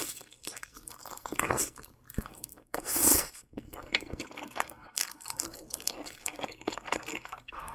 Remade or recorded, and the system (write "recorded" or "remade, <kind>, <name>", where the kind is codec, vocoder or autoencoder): remade, codec, SNAC